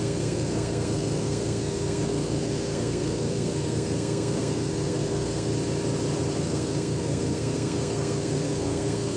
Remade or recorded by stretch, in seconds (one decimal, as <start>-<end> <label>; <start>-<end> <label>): 0.0-5.5 remade; 5.5-6.4 recorded; 6.4-9.2 remade